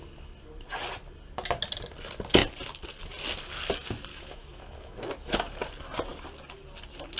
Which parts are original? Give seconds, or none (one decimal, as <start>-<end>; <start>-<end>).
0.0-4.1; 5.0-7.2